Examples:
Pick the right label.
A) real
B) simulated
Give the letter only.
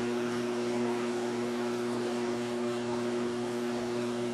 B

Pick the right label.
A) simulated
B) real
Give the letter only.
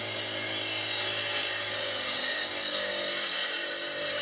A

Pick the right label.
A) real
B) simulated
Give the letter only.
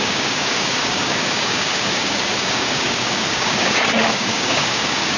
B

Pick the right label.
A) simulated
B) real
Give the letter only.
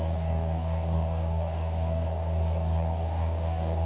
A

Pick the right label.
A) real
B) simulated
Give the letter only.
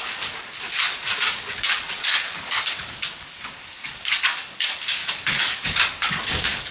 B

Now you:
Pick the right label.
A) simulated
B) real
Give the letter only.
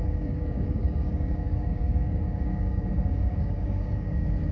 A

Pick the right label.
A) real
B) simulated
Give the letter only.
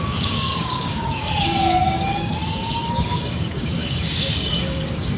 B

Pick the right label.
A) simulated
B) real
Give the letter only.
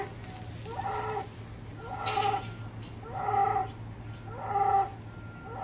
B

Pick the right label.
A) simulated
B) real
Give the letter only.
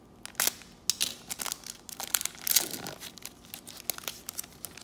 B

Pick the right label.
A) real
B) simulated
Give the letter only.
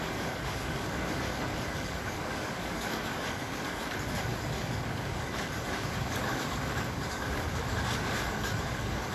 B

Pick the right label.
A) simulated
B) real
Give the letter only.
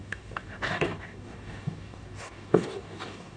A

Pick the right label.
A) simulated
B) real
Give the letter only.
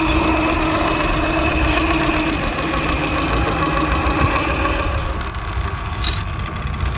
B